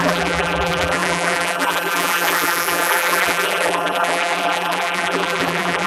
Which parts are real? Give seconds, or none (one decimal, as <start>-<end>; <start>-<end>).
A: none